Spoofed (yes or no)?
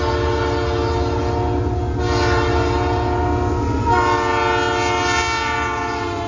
no